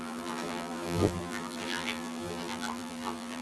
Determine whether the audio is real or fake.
fake